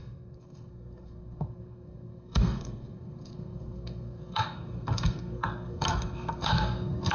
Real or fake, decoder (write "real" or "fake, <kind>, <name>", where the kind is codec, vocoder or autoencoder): fake, codec, SNAC